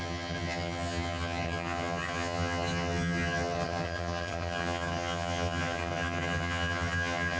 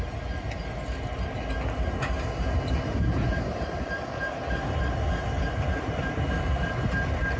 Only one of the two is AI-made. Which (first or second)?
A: first